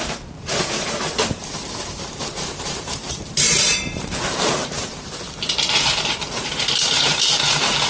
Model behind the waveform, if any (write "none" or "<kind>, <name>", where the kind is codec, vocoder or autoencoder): vocoder, BigVGAN v2